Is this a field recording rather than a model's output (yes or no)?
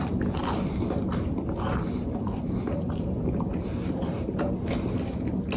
yes